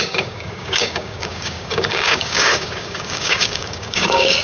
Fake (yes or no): yes